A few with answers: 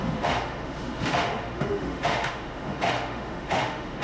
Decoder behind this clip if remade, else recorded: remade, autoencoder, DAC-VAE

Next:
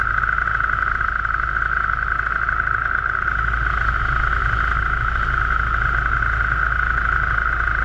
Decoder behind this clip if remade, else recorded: recorded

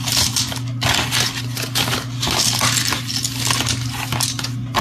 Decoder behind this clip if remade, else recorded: recorded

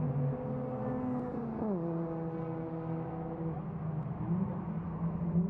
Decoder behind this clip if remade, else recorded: recorded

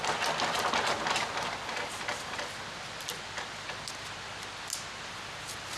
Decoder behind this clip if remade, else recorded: recorded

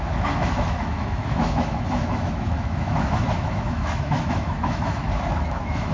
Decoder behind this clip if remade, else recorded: remade, autoencoder, DAC-VAE